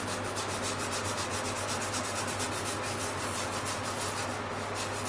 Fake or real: real